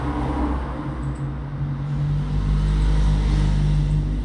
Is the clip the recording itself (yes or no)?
yes